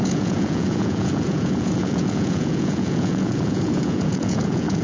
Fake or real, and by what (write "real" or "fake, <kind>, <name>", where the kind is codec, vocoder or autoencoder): fake, vocoder, Vocos